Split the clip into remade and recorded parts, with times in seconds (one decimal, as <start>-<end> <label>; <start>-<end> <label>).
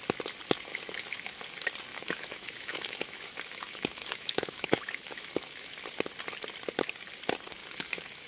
0.0-0.7 recorded; 0.7-1.4 remade; 1.4-1.9 recorded; 1.9-5.8 remade; 5.8-7.6 recorded; 7.6-8.3 remade